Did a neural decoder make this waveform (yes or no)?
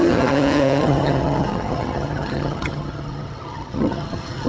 yes